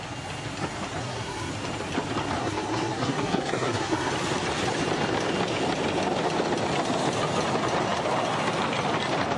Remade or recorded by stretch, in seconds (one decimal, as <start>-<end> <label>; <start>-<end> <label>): 0.0-1.0 recorded; 1.0-1.5 remade; 1.5-2.4 recorded; 2.4-4.1 remade; 4.1-9.4 recorded